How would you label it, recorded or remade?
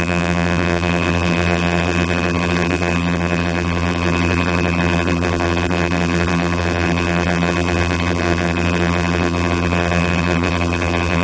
remade